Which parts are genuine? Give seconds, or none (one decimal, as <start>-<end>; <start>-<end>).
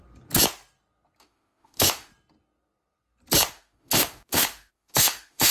0.0-1.2; 2.1-3.5